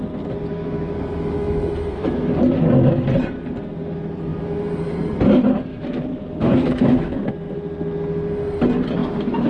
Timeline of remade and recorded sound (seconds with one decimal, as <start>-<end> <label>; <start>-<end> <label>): 0.0-0.5 recorded; 0.5-2.3 remade; 2.3-5.7 recorded; 5.7-7.3 remade; 7.3-9.0 recorded; 9.0-9.5 remade